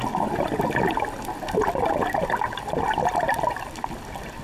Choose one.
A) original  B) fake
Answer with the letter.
A